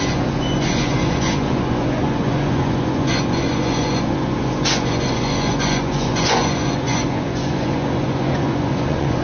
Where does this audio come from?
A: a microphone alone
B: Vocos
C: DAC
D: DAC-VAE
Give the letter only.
B